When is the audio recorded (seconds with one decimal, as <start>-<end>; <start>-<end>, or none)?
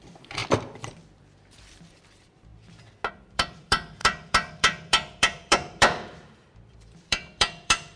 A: 0.4-1.2; 2.5-3.1